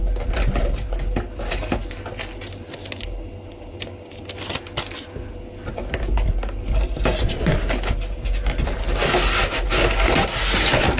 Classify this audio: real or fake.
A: real